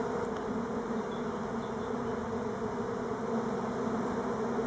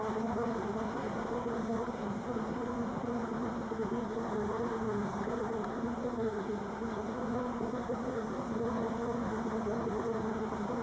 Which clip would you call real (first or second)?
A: first